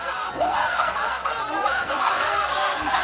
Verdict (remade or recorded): remade